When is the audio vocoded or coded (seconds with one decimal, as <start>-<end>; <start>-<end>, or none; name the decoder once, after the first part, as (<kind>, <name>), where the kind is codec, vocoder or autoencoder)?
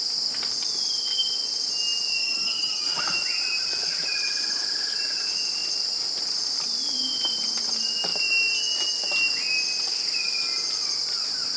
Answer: 2.2-3.0 (vocoder, HiFi-GAN)